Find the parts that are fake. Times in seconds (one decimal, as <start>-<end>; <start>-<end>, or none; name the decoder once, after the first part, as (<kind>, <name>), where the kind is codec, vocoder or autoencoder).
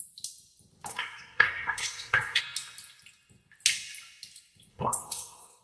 0.9-2.4 (codec, SNAC); 4.7-5.6